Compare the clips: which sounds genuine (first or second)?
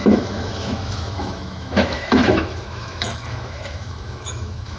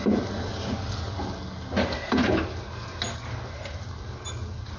second